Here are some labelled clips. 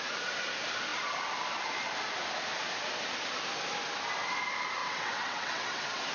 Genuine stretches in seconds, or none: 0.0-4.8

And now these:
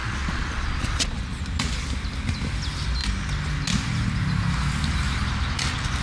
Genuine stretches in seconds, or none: 1.4-6.0

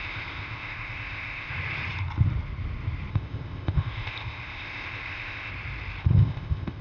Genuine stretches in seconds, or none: 1.5-3.1; 5.5-6.0

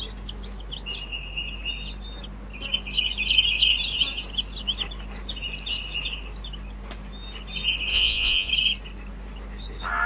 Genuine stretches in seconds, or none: 0.0-7.9; 8.5-10.1

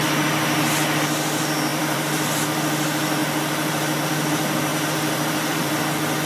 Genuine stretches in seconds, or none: 0.0-1.7; 2.4-4.7; 5.8-6.3

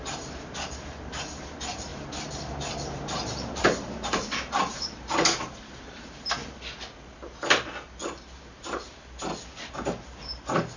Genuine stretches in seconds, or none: 6.4-9.7

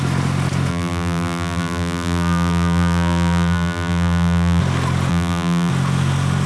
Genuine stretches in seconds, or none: 0.0-0.7; 4.6-5.1; 5.7-6.5

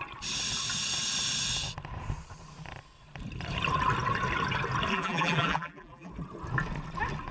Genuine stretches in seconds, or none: 0.0-4.9; 6.1-7.3